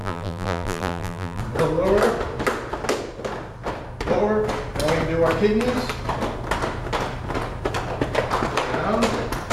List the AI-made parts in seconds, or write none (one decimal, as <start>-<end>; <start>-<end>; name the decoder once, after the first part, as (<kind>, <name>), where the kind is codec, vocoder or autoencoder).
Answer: 0.0-1.4 (vocoder, BigVGAN v2)